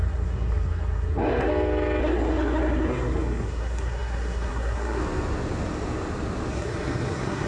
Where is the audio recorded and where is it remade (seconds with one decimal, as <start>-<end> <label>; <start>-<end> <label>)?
0.0-1.5 remade; 1.5-2.0 recorded; 2.0-5.0 remade; 5.0-6.5 recorded; 6.5-7.5 remade